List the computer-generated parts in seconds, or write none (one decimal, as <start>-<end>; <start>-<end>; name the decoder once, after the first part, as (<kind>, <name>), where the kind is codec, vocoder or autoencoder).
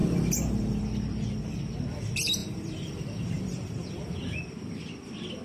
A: 0.0-0.8 (vocoder, BigVGAN v2); 2.4-3.9